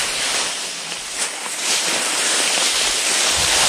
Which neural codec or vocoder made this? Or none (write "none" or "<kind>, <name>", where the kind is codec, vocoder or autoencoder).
vocoder, BigVGAN v2